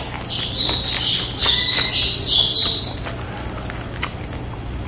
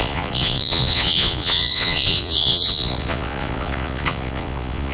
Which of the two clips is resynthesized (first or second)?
second